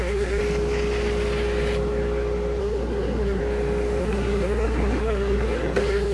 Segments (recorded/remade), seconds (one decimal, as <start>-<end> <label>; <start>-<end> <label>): 0.0-0.4 remade; 0.4-2.6 recorded; 2.6-3.4 remade; 3.4-4.0 recorded; 4.0-6.1 remade